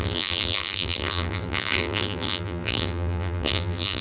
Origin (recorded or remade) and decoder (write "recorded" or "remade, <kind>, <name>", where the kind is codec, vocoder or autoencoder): remade, vocoder, BigVGAN v2